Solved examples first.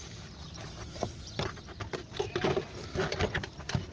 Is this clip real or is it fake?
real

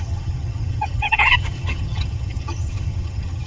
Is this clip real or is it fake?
fake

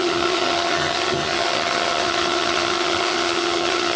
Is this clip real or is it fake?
fake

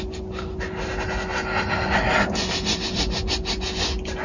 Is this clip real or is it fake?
real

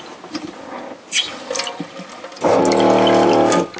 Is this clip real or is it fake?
real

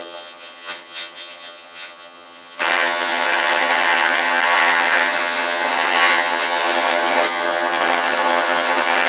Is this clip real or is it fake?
fake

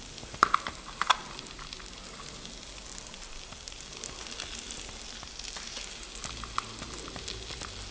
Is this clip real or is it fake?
real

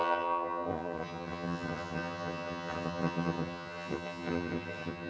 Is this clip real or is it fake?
fake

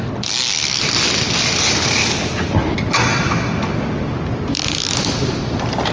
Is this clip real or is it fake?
real